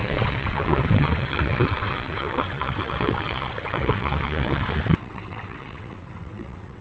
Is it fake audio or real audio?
fake